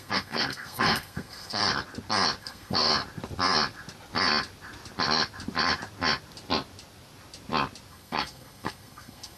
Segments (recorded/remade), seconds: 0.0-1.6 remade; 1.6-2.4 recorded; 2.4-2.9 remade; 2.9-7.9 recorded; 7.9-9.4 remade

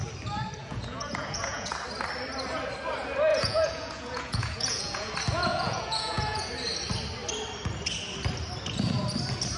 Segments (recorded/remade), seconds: 0.0-0.6 recorded; 0.6-1.7 remade; 1.7-3.3 recorded; 3.3-5.1 remade; 5.1-5.5 recorded; 5.5-6.5 remade; 6.5-9.6 recorded